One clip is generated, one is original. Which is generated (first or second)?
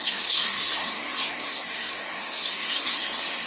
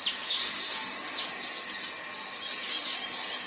first